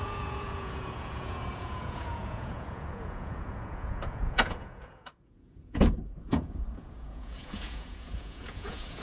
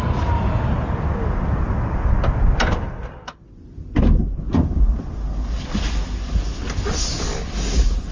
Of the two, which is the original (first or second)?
second